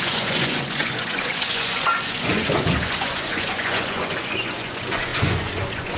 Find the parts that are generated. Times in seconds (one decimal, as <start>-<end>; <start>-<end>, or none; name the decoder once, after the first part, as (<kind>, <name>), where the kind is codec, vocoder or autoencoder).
0.0-6.0 (vocoder, Vocos)